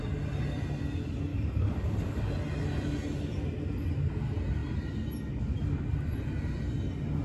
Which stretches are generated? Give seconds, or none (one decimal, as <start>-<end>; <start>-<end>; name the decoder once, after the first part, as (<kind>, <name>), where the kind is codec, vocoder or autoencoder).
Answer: 1.3-2.3 (codec, DAC)